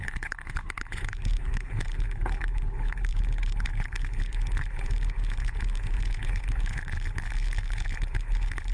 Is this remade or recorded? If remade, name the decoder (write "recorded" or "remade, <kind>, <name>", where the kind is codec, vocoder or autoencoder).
remade, codec, HILCodec